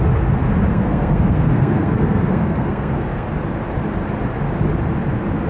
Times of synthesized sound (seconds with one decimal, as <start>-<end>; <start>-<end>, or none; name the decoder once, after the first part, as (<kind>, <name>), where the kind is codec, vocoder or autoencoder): 0.7-3.3 (codec, SNAC)